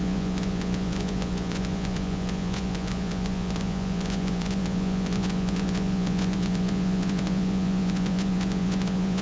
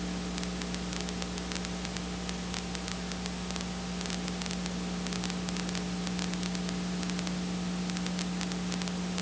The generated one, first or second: first